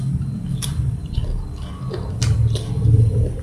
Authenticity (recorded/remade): recorded